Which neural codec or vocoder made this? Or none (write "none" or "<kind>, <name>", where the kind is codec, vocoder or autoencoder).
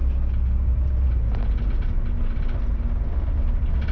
none